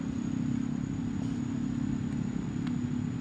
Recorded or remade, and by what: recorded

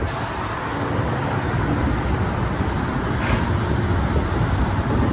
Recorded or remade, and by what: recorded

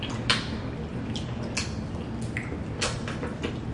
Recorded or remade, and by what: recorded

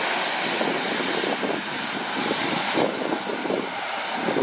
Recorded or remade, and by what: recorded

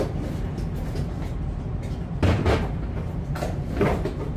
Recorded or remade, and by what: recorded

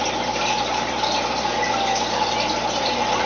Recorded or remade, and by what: recorded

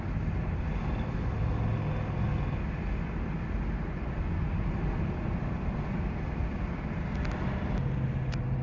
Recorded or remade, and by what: recorded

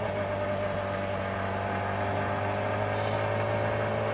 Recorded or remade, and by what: recorded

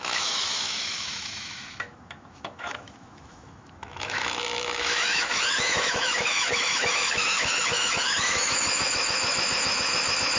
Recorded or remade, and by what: remade, autoencoder, DAC-VAE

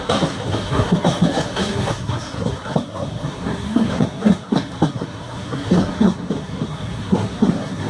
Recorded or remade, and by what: remade, codec, SNAC